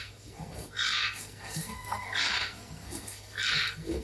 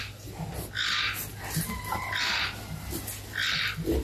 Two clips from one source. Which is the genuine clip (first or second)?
second